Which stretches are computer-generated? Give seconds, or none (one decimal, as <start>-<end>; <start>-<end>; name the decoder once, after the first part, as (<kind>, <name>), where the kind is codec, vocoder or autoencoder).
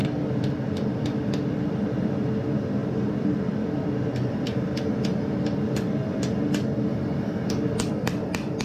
none